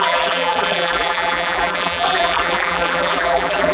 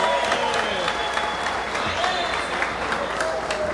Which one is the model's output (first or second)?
first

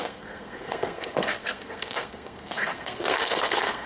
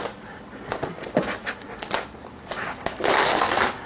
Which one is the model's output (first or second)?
first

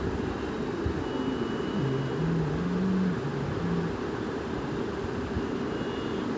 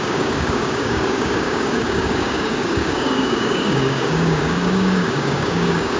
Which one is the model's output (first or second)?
second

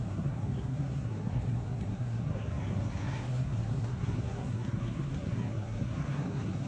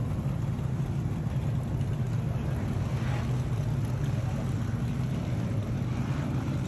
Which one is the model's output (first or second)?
first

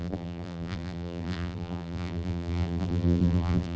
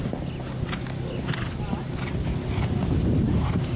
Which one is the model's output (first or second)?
first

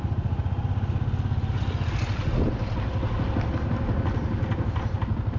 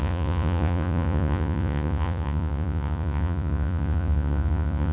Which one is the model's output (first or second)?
second